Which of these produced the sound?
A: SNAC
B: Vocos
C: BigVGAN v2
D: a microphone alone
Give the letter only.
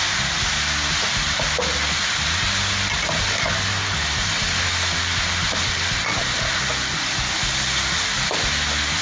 D